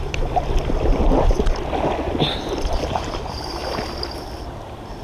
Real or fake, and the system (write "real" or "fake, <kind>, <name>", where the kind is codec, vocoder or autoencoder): real